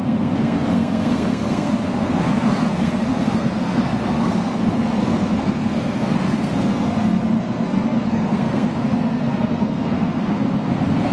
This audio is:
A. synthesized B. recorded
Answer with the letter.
A